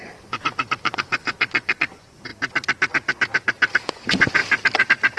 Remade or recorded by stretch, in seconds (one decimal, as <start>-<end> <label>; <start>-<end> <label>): 0.0-2.3 remade; 2.3-3.8 recorded; 3.8-4.4 remade; 4.4-5.2 recorded